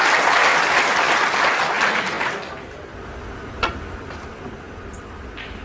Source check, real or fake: real